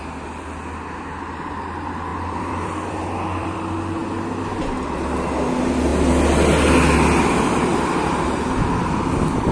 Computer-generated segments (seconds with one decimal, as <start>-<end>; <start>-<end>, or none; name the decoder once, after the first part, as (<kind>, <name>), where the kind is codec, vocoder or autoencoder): 2.1-3.6 (vocoder, BigVGAN v2); 7.7-8.6